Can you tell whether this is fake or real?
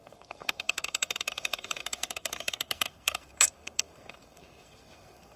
fake